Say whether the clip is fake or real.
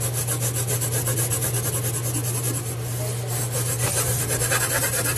real